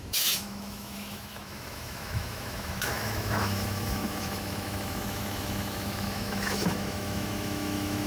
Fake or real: fake